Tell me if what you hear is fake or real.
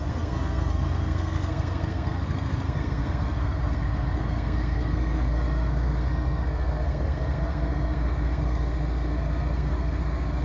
fake